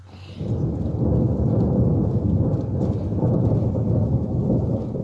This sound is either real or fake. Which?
real